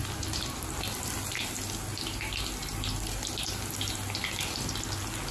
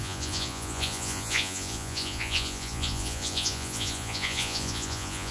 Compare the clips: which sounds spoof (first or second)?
second